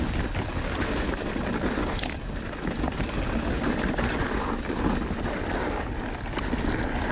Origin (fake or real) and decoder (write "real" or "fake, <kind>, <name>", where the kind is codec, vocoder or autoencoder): real